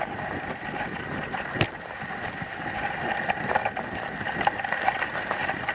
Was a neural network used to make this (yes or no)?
no